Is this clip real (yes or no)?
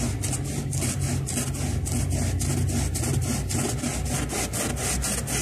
yes